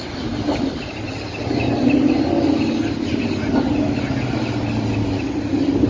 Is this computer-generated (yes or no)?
no